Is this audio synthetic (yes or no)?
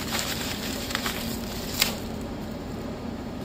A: yes